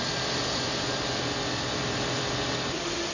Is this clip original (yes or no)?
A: no